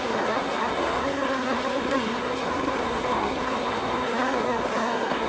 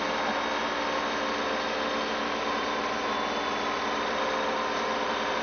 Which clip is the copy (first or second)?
first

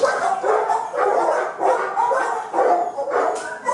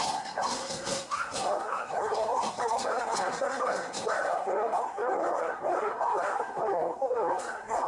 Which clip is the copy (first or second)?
second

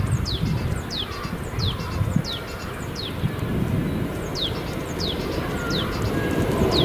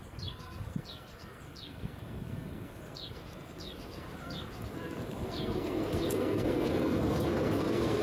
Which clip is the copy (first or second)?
second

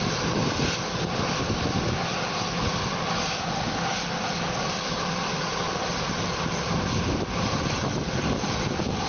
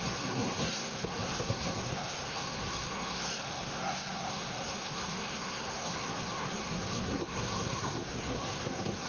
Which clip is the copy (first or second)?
second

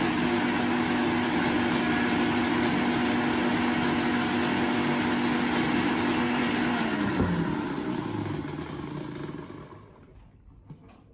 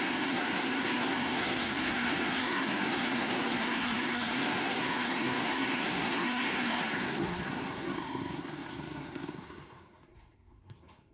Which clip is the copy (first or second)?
second